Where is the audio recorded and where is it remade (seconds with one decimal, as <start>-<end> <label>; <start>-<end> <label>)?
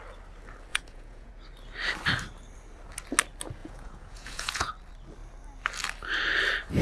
0.0-0.7 recorded; 0.7-1.3 remade; 1.3-3.6 recorded; 3.6-4.7 remade; 4.7-6.8 recorded